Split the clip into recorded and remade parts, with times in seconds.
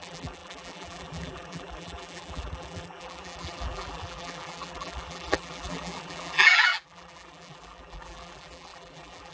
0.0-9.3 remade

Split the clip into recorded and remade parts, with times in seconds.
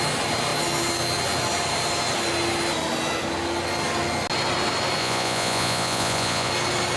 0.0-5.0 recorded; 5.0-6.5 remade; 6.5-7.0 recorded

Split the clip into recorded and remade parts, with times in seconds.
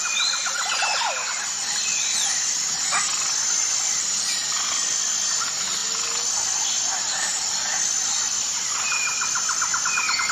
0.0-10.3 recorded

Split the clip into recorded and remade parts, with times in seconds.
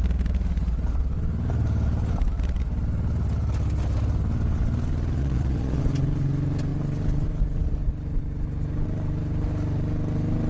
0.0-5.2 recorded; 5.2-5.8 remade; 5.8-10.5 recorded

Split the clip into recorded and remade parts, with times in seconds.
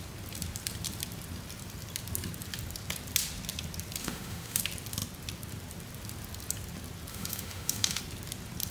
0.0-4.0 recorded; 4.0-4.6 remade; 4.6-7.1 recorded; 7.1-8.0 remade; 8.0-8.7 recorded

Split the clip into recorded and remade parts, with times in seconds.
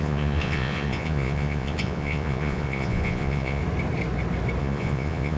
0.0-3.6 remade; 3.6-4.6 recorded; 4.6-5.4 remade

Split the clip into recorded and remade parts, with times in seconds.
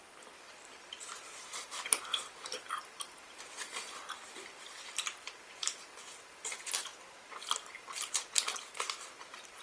0.0-9.6 remade